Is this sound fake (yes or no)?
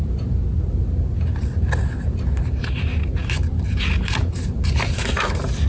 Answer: no